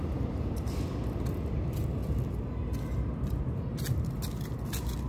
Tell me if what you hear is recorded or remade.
recorded